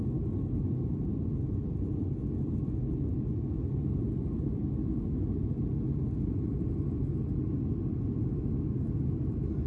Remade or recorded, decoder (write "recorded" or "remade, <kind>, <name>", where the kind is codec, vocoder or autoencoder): recorded